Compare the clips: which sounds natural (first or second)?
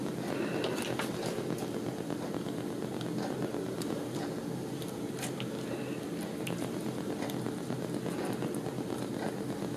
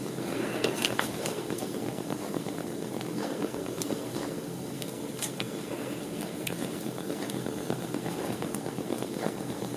first